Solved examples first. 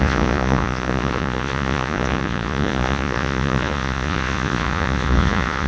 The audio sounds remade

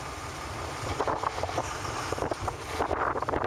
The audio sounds recorded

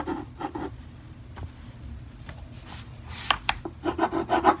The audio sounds recorded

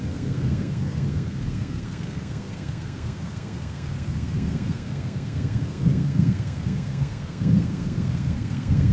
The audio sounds remade